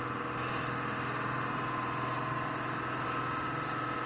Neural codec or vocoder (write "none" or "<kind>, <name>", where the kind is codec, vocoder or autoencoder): none